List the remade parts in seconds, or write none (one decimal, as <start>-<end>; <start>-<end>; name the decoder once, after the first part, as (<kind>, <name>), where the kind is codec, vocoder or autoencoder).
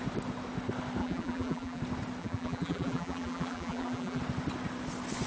1.0-1.8 (vocoder, BigVGAN v2); 2.2-4.2